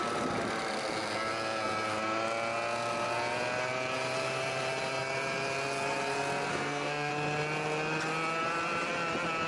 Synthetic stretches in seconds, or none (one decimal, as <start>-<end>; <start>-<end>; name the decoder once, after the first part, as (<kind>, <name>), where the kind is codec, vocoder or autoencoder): 6.5-7.1 (codec, SNAC)